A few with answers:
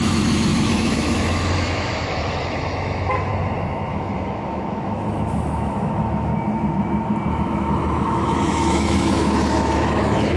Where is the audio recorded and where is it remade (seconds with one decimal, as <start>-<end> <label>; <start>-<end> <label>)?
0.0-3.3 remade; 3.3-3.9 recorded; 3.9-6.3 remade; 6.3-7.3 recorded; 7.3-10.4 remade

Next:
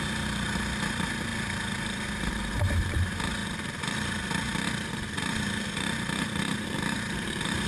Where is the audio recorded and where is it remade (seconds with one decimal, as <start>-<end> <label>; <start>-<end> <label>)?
0.0-1.3 remade; 1.3-1.8 recorded; 1.8-3.4 remade; 3.4-6.4 recorded; 6.4-7.7 remade

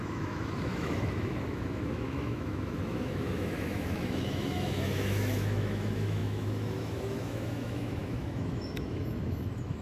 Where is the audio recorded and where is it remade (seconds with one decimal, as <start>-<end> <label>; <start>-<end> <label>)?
0.0-9.8 remade